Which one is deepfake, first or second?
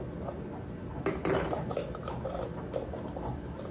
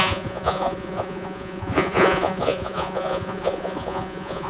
second